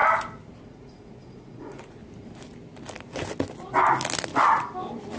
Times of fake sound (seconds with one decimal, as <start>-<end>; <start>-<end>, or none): 0.6-2.0